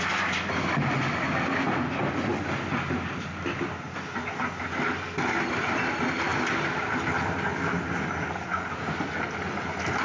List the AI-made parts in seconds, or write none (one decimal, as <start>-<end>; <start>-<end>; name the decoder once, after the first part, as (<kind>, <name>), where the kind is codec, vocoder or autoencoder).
none